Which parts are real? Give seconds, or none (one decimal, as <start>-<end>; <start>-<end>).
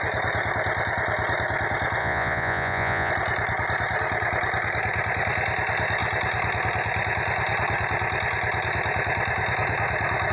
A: 0.0-2.0; 3.1-10.3